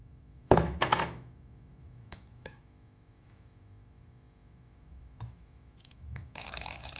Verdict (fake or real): fake